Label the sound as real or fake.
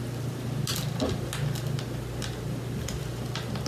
real